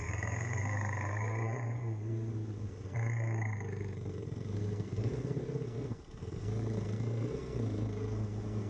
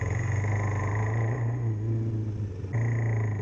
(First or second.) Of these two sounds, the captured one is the second